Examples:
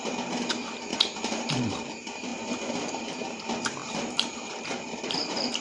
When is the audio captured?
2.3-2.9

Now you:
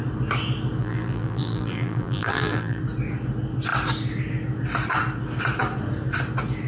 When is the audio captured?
0.0-0.8; 2.8-6.7

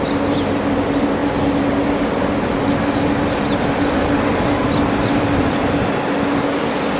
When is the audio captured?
0.0-7.0

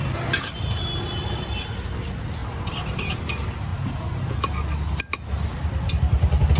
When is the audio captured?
0.0-2.4; 3.2-6.6

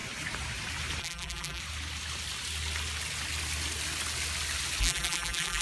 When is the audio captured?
0.0-1.0; 1.6-4.8

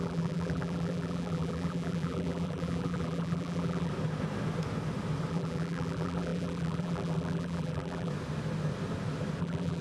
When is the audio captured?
3.9-5.3; 8.1-9.4

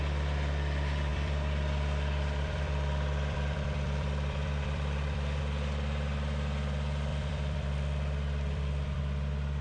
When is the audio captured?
0.0-1.1; 5.4-7.1; 9.0-9.6

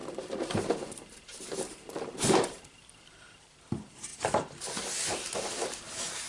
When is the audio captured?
none